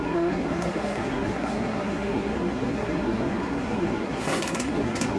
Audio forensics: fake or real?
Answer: fake